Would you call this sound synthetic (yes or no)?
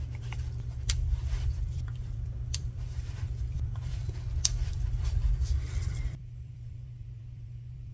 yes